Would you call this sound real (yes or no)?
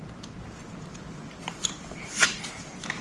yes